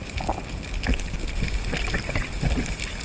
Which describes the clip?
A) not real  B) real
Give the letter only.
B